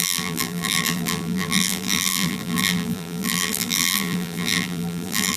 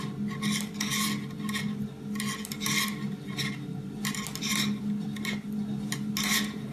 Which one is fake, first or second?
first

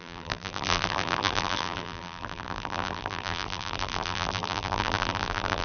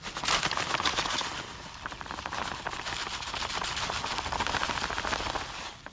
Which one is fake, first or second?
first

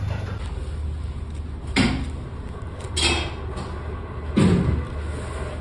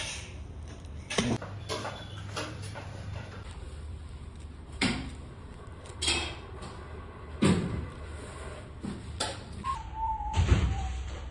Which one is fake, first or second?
second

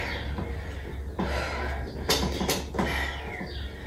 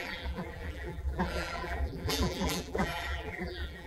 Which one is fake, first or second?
second